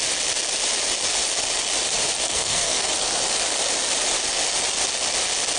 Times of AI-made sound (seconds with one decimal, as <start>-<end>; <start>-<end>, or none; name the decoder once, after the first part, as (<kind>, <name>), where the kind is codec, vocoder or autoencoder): 2.2-2.9 (codec, SNAC)